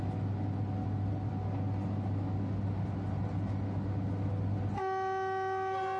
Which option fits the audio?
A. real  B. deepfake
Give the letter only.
A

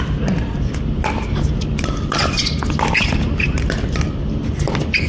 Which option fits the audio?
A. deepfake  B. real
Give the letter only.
B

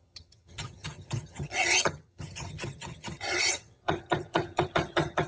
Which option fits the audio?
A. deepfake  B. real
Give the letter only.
A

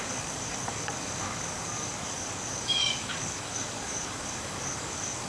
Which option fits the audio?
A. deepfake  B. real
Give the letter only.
A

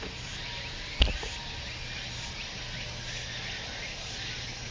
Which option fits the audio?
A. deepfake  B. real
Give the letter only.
B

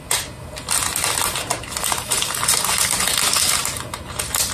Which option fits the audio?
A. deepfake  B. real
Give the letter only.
B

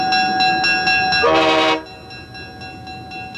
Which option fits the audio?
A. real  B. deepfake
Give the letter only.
A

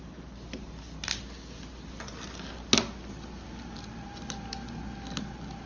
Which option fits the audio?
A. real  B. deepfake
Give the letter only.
A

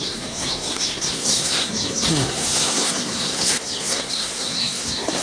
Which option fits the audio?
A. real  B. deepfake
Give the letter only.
B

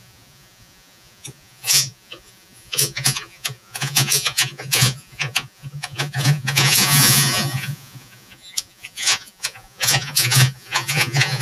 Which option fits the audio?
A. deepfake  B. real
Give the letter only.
A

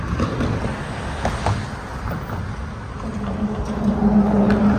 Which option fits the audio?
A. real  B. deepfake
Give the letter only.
A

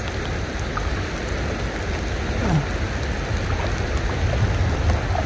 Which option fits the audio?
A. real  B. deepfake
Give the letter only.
A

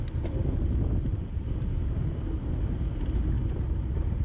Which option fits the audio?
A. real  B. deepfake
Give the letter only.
A